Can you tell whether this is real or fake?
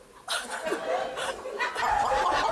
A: real